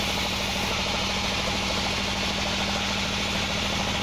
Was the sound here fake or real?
real